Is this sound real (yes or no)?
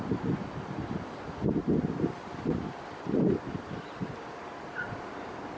yes